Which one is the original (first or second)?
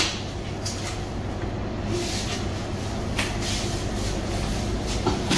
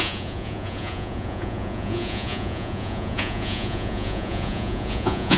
first